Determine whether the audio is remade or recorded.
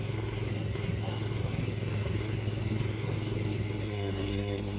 remade